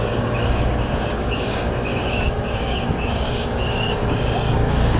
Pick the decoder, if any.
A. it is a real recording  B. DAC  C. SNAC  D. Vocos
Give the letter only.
B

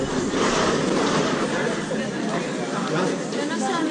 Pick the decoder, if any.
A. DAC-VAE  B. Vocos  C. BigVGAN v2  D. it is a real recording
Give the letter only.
D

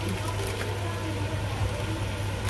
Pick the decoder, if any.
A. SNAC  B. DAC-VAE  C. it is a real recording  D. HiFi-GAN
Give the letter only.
C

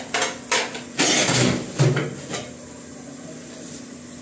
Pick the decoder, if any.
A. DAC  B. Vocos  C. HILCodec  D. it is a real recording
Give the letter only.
D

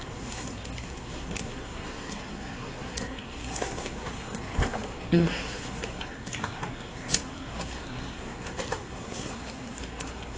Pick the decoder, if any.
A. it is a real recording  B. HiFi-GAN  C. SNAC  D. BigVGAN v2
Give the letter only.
C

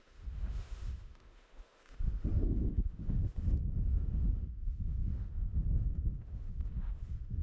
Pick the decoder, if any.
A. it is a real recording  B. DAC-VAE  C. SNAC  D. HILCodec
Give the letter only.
B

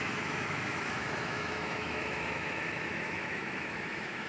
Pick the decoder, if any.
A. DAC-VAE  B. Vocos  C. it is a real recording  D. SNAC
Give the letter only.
A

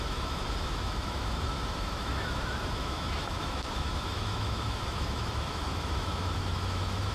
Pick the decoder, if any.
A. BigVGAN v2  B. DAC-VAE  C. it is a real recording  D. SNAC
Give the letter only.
B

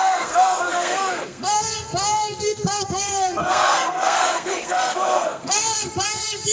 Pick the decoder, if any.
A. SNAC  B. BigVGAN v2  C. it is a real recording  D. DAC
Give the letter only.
A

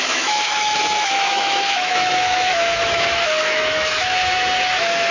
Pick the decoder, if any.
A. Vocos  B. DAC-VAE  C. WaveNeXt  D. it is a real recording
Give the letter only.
B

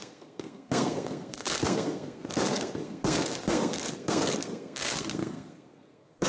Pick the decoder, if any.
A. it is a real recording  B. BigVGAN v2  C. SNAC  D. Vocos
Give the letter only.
C